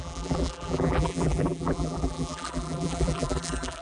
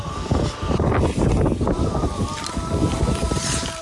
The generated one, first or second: first